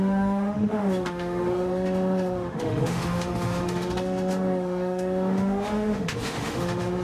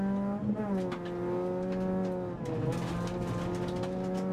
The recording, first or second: second